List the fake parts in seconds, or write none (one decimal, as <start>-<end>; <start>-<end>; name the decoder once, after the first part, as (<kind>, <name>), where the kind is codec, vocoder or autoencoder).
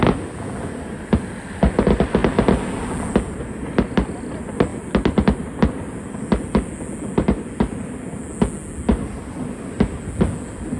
none